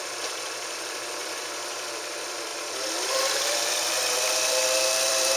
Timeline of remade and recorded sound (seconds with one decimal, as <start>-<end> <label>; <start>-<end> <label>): 0.0-5.4 remade